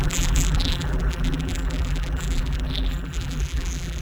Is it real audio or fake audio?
fake